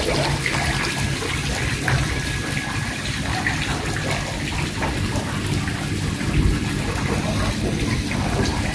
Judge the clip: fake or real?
real